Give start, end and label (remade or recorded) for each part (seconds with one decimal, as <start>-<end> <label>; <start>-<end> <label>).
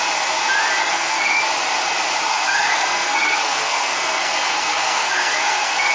0.0-0.8 recorded; 0.8-1.4 remade; 1.4-2.3 recorded; 2.3-5.9 remade